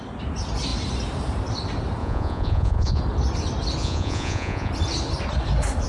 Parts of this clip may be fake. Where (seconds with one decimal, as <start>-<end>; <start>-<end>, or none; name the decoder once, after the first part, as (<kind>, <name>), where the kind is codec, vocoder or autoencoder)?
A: 2.0-3.0 (vocoder, Vocos); 3.8-4.7